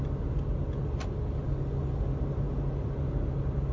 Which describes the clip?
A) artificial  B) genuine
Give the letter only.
B